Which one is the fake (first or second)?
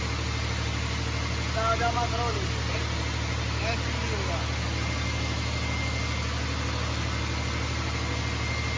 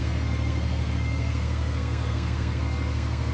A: second